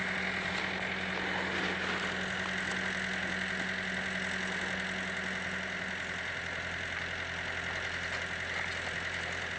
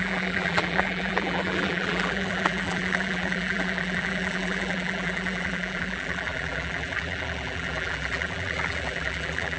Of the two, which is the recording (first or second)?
first